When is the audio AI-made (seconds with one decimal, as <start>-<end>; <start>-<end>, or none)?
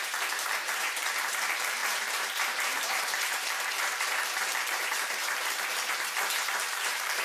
0.0-7.2